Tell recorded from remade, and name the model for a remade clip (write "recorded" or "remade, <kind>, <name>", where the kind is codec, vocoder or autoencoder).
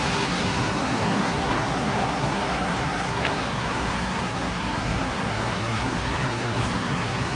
remade, codec, SNAC